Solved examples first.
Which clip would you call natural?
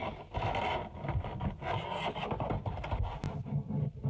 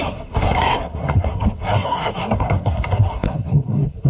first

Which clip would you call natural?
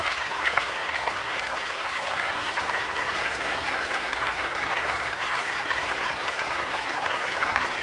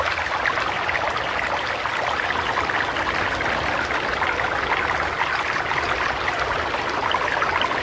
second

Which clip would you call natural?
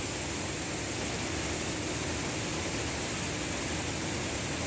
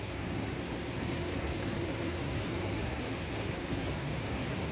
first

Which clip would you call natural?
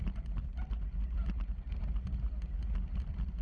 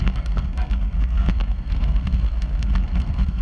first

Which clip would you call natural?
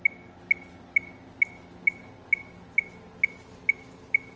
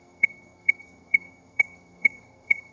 first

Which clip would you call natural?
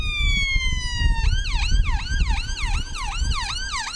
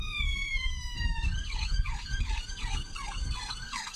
first